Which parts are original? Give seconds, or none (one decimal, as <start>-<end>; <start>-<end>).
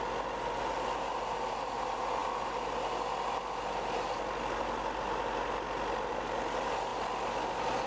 0.0-7.9